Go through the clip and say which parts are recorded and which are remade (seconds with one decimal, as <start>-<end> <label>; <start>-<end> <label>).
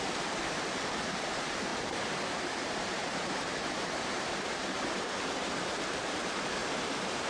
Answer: 0.0-1.7 recorded; 1.7-6.1 remade; 6.1-7.3 recorded